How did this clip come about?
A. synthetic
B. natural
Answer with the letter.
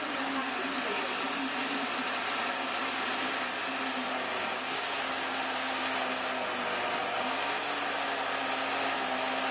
B